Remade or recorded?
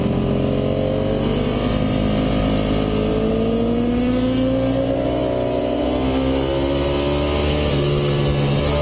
recorded